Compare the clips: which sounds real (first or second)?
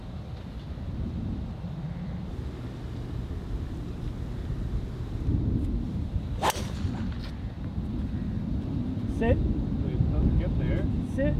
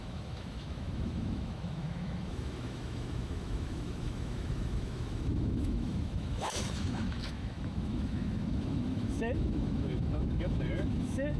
first